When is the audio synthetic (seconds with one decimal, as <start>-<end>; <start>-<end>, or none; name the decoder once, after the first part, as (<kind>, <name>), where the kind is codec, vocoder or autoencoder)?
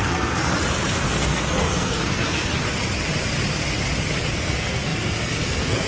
0.0-0.4 (codec, SNAC); 0.9-2.5; 4.3-5.9